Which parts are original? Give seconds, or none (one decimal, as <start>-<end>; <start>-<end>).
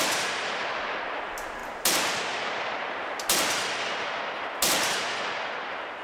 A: 0.0-6.0